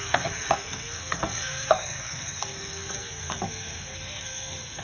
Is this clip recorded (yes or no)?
no